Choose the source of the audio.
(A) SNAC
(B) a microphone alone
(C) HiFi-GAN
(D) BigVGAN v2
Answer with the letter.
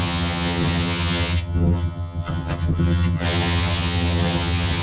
C